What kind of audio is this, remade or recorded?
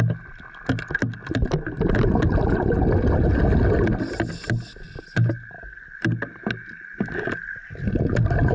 recorded